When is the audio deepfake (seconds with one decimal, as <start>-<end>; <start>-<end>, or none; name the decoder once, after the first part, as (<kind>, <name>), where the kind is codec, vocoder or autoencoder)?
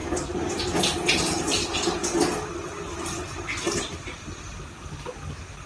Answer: none